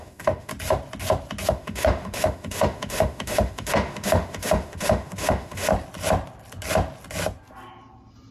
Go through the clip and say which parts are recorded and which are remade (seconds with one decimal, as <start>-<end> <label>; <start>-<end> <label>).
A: 0.0-0.5 remade; 0.5-1.5 recorded; 1.5-5.7 remade; 5.7-8.3 recorded